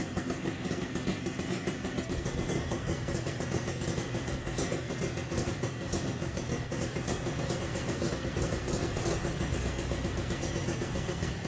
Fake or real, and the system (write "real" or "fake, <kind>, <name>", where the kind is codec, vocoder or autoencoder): fake, codec, SNAC